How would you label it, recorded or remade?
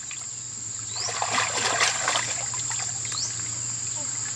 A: recorded